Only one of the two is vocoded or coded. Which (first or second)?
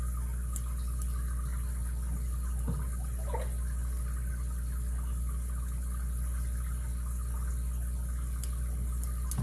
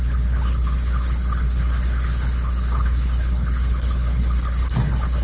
second